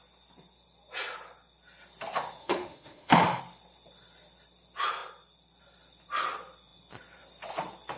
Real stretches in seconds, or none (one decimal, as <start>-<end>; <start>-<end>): 0.0-2.4; 3.4-8.0